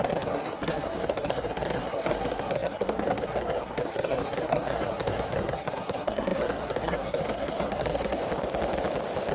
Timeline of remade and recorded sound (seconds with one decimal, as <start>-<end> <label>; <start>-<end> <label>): 0.0-8.2 remade; 8.2-9.3 recorded